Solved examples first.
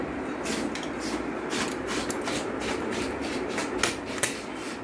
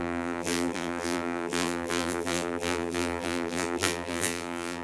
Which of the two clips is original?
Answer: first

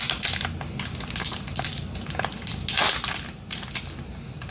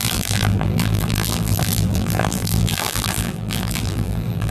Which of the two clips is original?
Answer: first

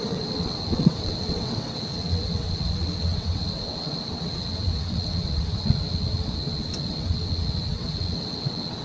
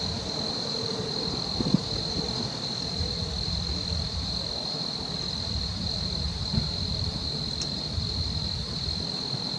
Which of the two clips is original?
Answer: second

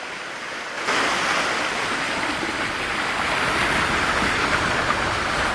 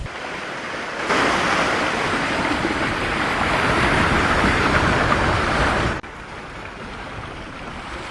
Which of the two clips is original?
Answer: first